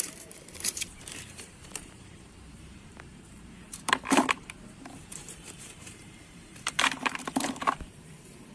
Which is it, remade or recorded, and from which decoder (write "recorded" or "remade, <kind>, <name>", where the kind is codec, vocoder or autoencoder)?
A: remade, vocoder, BigVGAN v2